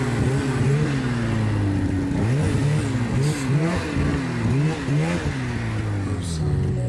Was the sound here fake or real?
real